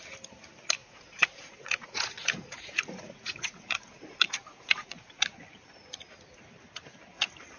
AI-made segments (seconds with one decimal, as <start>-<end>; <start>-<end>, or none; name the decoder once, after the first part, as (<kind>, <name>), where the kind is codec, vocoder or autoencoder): 0.8-5.4 (vocoder, Vocos)